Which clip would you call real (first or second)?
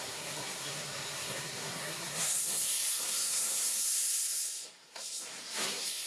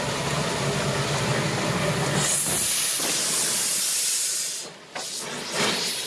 second